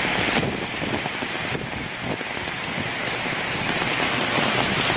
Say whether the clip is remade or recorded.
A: recorded